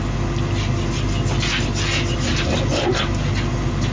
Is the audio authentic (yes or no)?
yes